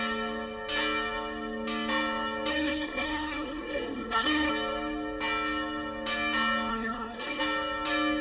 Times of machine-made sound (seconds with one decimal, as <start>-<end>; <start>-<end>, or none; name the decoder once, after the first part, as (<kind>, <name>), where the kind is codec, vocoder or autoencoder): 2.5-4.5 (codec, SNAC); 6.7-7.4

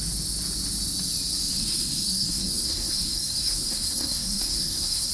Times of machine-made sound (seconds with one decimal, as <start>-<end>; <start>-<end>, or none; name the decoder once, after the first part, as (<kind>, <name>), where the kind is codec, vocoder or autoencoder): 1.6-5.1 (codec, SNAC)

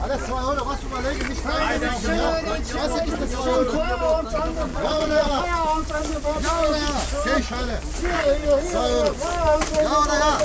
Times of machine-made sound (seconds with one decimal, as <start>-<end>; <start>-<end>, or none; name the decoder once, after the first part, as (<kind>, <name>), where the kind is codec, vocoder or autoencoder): 4.7-5.4 (vocoder, Vocos)

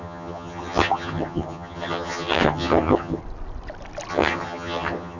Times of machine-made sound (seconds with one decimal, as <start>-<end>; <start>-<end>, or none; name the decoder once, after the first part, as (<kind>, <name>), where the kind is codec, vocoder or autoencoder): 0.0-3.2 (vocoder, HiFi-GAN); 4.1-5.2

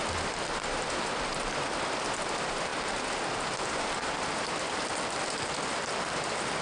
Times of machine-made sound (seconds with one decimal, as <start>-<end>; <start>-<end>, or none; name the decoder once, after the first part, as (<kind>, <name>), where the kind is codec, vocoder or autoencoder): none

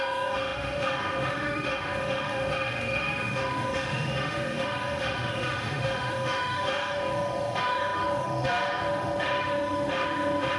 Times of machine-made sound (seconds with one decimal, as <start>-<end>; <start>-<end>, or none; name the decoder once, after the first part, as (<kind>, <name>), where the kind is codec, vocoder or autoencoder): 0.0-10.6 (autoencoder, DAC-VAE)

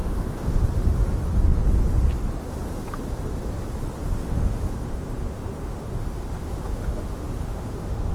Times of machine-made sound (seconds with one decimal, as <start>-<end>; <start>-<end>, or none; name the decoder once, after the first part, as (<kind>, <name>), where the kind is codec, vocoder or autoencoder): 0.0-0.6 (autoencoder, DAC-VAE); 4.2-8.1